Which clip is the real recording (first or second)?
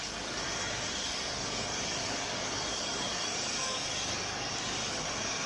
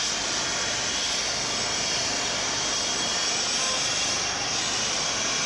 second